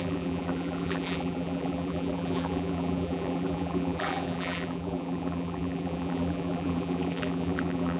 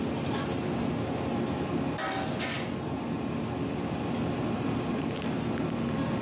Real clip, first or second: second